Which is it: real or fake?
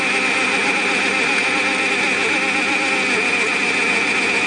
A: real